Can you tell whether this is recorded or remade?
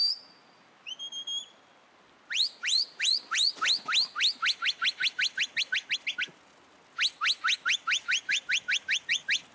recorded